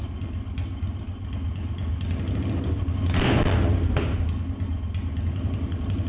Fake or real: real